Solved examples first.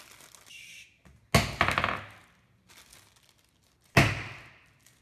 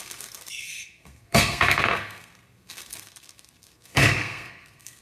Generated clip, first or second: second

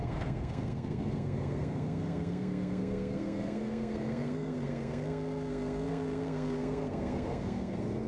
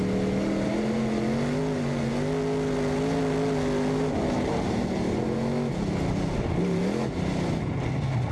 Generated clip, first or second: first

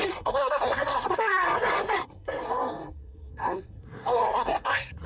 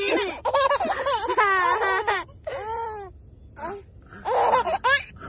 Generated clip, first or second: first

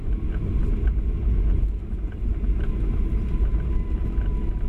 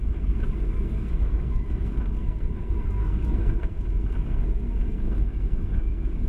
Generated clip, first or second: second